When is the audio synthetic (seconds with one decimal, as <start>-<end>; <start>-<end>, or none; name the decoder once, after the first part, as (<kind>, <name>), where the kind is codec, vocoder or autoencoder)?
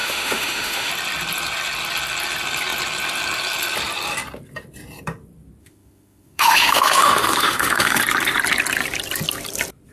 0.0-0.9 (autoencoder, DAC-VAE); 5.6-8.0